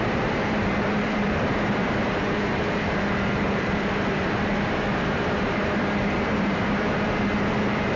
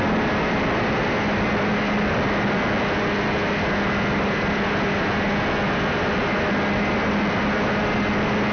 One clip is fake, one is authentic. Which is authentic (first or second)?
second